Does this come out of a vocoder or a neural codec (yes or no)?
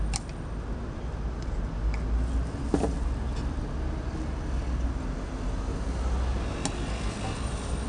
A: no